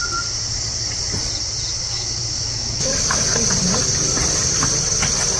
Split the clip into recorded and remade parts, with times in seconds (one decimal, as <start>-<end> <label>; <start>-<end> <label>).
0.0-1.7 recorded; 1.7-2.9 remade; 2.9-5.4 recorded